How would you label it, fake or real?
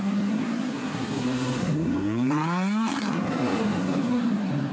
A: fake